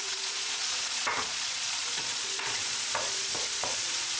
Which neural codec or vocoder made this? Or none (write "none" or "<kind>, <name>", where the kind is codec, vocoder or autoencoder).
vocoder, Vocos